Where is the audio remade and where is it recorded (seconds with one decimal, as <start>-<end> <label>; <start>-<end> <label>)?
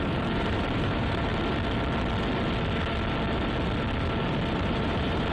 0.0-1.3 remade; 1.3-4.5 recorded; 4.5-5.3 remade